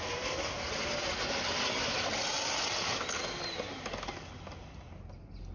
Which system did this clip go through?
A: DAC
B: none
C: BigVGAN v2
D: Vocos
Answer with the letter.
B